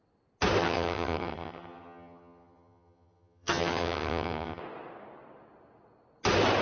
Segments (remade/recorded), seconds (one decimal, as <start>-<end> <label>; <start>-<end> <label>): 0.0-0.6 recorded; 0.6-4.6 remade; 4.6-6.6 recorded